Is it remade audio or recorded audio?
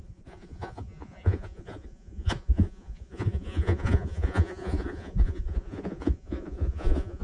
remade